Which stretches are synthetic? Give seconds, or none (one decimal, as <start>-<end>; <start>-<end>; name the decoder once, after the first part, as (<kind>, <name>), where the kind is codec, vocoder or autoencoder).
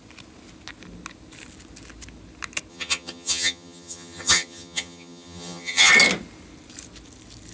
2.7-5.9 (vocoder, HiFi-GAN)